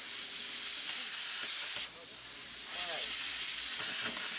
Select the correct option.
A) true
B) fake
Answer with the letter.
A